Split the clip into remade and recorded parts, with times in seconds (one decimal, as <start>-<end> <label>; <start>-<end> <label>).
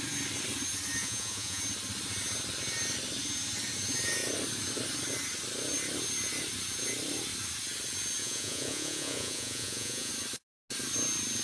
0.0-1.0 recorded; 1.0-1.6 remade; 1.6-8.2 recorded; 8.2-10.1 remade; 10.1-11.4 recorded